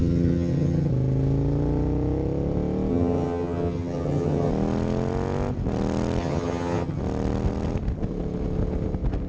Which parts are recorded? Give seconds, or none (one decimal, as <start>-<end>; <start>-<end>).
0.9-2.9; 4.5-6.2; 7.0-9.3